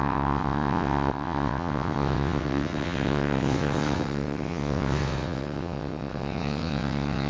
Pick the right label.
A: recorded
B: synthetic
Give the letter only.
B